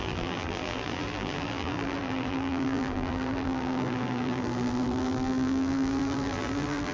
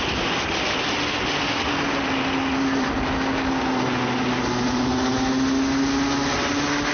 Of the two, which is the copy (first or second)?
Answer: first